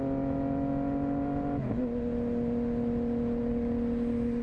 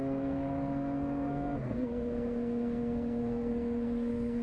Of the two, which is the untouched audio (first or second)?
first